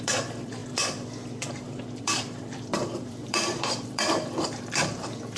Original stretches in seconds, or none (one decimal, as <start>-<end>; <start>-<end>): 0.6-2.0